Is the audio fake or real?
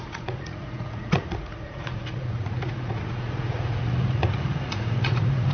fake